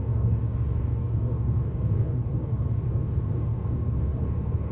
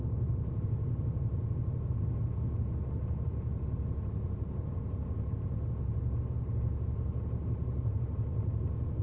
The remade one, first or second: first